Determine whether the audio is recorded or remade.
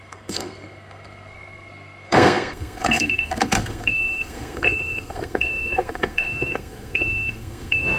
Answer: remade